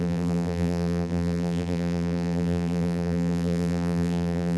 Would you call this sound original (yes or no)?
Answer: no